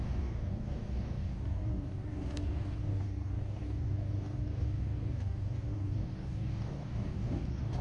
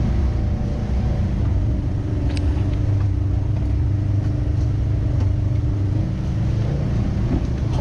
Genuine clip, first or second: second